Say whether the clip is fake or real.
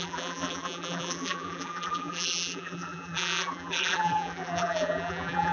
fake